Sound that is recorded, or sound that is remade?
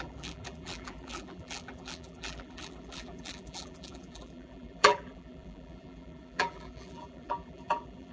remade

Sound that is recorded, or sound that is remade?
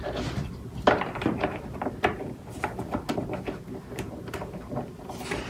remade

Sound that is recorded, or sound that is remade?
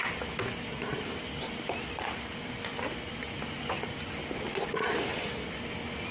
recorded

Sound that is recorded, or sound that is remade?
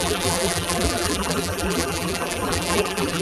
remade